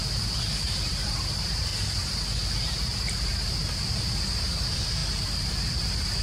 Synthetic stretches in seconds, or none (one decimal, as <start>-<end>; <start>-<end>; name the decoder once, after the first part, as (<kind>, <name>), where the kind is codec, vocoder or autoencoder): 0.9-1.7 (vocoder, BigVGAN v2); 3.3-6.2